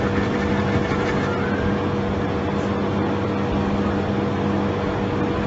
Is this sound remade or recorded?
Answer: recorded